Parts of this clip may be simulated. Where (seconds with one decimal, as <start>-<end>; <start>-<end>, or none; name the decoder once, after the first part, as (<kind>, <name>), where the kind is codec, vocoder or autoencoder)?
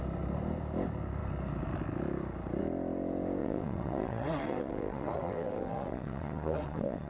3.4-7.1 (vocoder, WaveNeXt)